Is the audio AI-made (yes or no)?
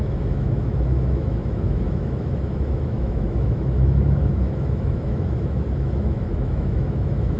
yes